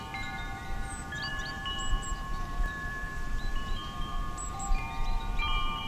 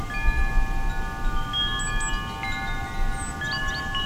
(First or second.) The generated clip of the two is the first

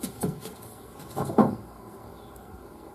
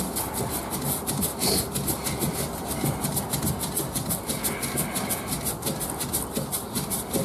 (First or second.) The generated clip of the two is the first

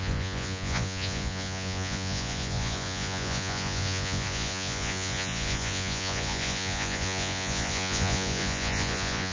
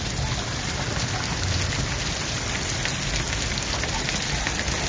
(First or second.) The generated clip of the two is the first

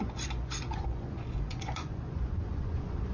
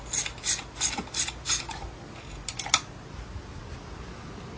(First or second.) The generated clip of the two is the first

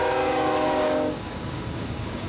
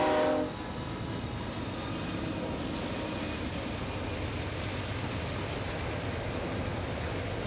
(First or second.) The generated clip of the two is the first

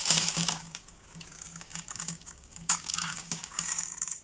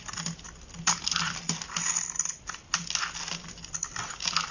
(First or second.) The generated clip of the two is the first